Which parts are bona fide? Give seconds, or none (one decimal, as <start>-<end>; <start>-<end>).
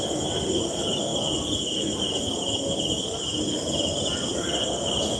0.0-5.2